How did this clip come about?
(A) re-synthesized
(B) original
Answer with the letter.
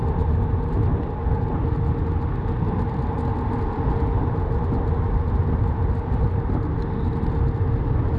B